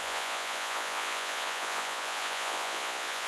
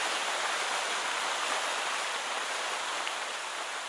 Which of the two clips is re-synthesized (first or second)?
first